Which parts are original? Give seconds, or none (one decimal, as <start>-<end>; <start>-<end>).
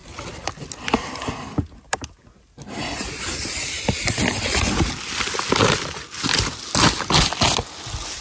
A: 0.0-8.2